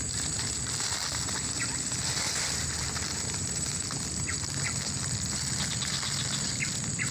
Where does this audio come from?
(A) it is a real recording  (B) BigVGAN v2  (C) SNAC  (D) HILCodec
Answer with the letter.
A